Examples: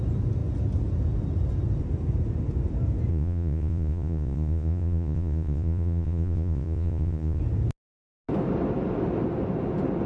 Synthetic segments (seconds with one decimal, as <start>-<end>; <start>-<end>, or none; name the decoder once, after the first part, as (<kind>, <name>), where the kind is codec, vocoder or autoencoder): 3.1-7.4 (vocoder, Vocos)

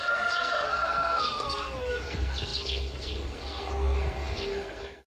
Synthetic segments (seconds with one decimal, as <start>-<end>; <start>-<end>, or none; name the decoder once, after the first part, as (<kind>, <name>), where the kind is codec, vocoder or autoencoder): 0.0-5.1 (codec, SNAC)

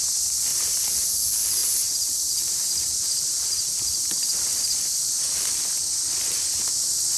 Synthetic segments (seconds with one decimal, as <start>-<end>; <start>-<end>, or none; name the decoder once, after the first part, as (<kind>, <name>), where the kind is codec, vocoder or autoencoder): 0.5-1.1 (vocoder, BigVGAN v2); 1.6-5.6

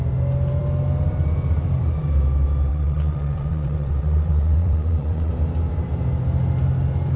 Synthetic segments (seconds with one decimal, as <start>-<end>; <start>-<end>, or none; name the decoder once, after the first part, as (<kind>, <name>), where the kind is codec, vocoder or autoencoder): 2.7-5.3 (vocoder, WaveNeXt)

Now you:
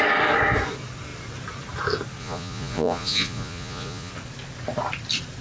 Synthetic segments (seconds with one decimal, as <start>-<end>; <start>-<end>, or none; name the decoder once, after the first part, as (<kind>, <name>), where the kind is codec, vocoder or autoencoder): 2.2-4.1 (vocoder, Vocos)

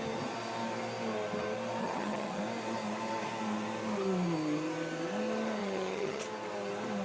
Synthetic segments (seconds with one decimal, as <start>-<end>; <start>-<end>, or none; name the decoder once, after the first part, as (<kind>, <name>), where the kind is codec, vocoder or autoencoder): 1.8-2.4 (vocoder, HiFi-GAN); 5.6-6.2

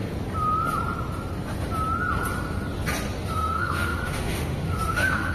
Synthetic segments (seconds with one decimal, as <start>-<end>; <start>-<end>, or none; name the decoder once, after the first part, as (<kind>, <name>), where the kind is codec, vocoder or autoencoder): 3.2-5.3 (autoencoder, DAC-VAE)